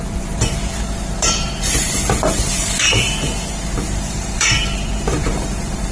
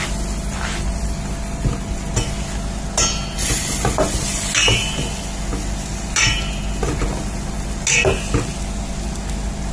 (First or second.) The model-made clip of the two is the first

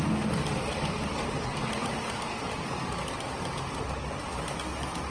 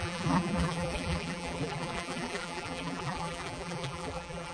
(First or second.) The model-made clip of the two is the second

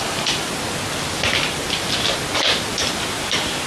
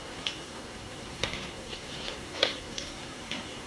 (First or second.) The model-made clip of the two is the second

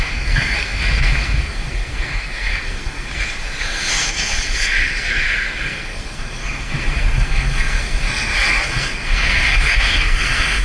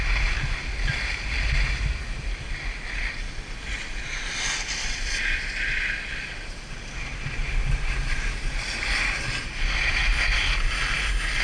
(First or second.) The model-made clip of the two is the first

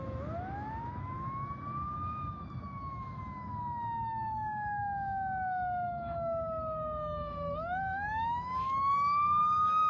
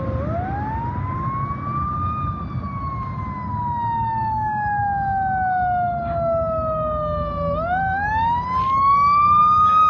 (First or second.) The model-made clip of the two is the first